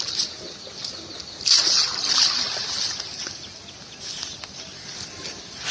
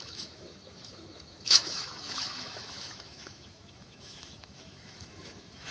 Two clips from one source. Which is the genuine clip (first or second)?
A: first